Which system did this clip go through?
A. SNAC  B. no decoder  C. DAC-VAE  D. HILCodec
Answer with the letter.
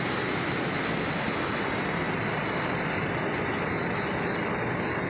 B